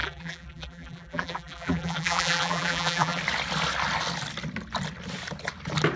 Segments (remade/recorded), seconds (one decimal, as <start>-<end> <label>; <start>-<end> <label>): 0.0-3.2 remade; 3.2-6.0 recorded